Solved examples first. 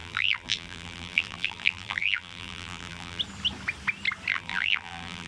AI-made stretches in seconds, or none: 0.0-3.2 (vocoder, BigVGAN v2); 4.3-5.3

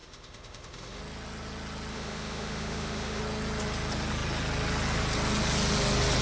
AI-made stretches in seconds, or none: 0.0-1.0 (autoencoder, DAC-VAE); 1.9-3.2